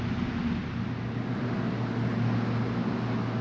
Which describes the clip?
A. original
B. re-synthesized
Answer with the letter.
A